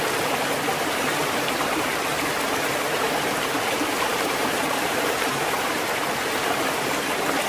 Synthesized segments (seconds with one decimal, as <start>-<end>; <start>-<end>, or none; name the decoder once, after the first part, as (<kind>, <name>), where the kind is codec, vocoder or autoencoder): 4.1-5.7 (vocoder, BigVGAN v2)